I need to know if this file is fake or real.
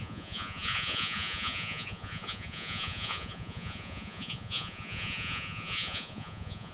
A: fake